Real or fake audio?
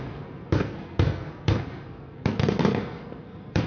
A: fake